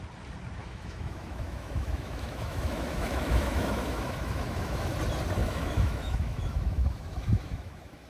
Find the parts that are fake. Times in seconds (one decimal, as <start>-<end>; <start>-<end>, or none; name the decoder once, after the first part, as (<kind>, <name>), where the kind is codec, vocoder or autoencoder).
0.6-4.9 (autoencoder, DAC-VAE); 5.4-8.1